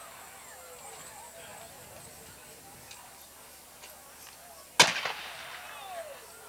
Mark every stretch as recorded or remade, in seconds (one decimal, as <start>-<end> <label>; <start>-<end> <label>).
0.0-6.5 recorded